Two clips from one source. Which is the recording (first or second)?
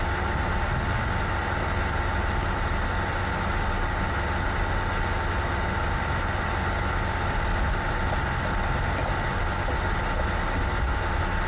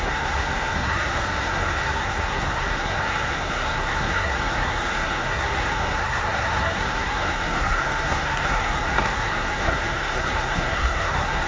first